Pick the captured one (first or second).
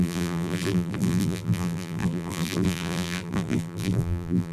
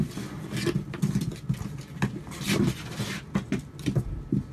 second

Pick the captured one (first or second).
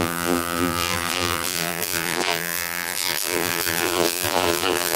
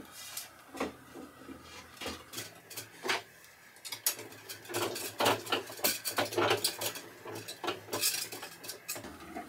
second